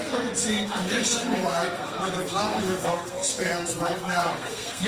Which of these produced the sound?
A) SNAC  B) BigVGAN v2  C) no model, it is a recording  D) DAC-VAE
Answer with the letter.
A